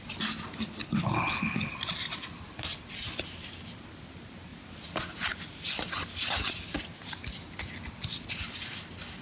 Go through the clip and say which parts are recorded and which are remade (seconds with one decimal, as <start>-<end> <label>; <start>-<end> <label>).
0.0-0.8 recorded; 0.8-1.7 remade; 1.7-9.2 recorded